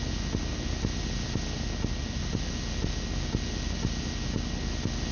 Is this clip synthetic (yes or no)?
no